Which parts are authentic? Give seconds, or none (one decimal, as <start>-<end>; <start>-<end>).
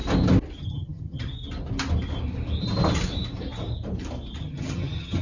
0.0-0.6; 1.3-4.4